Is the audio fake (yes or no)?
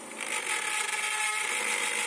no